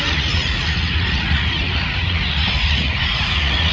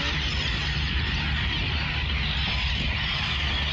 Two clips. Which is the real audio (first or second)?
second